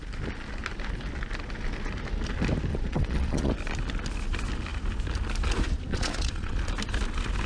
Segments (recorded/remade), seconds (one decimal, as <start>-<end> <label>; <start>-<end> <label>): 0.0-2.7 recorded; 2.7-3.5 remade; 3.5-5.9 recorded; 5.9-6.6 remade; 6.6-7.5 recorded